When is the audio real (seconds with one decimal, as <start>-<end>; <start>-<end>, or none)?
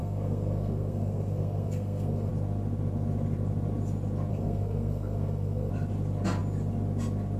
2.3-4.3; 5.7-7.4